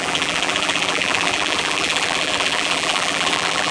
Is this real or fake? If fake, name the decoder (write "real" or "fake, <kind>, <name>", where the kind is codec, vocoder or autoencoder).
fake, vocoder, BigVGAN v2